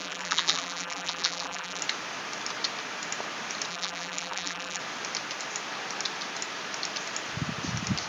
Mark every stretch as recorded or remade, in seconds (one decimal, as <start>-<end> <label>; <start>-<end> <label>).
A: 0.0-1.8 remade; 1.8-3.7 recorded; 3.7-4.8 remade; 4.8-8.1 recorded